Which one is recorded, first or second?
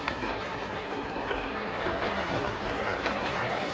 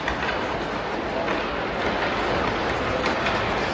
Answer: second